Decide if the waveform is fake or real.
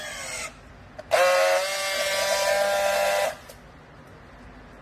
real